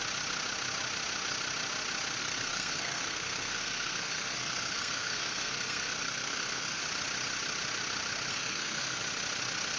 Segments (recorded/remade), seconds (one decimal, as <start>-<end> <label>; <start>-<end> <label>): 0.0-2.2 recorded; 2.2-6.8 remade; 6.8-8.3 recorded; 8.3-9.0 remade; 9.0-9.8 recorded